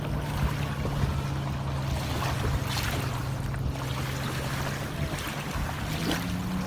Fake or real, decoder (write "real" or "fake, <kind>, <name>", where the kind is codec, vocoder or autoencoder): real